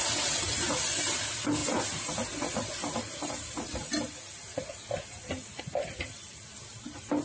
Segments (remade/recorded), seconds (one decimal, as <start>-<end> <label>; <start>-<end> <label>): 0.0-7.2 recorded